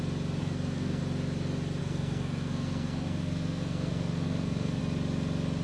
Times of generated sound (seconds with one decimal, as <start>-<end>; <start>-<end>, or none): 0.4-1.0; 1.8-4.8